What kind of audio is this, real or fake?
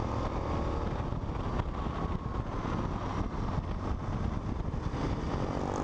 real